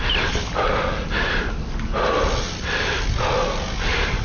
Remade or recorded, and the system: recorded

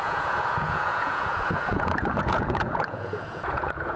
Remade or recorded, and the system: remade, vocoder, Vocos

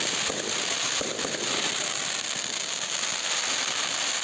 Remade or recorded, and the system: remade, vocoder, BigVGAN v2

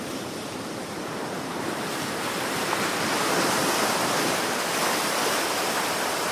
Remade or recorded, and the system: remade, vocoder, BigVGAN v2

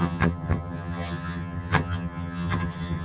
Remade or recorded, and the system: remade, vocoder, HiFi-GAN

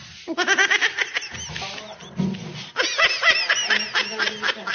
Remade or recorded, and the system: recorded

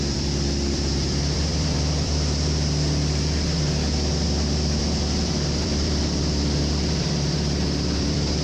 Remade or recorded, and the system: remade, vocoder, BigVGAN v2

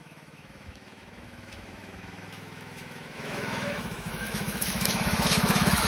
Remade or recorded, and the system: remade, autoencoder, DAC-VAE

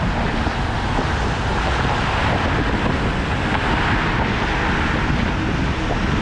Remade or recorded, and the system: recorded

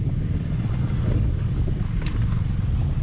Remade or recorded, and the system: recorded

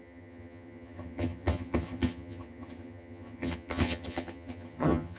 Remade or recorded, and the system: remade, vocoder, HiFi-GAN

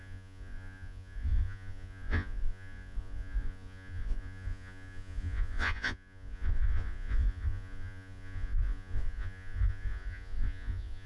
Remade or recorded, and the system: remade, vocoder, Vocos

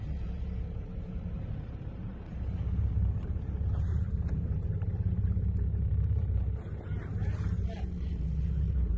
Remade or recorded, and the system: remade, vocoder, BigVGAN v2